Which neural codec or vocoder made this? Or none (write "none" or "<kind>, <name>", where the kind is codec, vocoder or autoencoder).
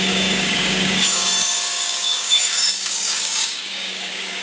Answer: codec, DAC